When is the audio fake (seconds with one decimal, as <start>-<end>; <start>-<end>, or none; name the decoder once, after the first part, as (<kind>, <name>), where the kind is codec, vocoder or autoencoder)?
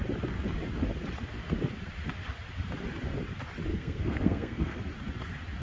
3.7-4.8 (codec, SNAC)